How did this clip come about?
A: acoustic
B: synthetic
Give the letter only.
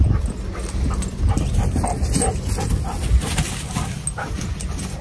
A